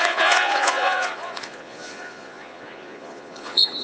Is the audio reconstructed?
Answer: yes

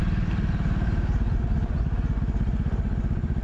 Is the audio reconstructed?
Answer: no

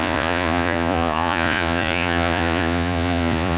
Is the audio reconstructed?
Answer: yes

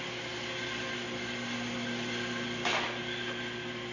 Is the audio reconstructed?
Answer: no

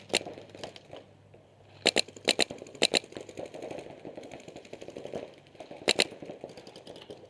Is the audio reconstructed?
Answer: no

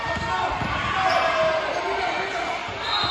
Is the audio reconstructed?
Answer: no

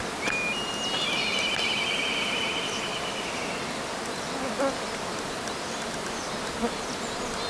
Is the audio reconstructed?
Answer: no